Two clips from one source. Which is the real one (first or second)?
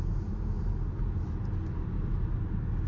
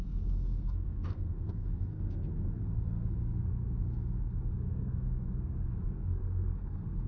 first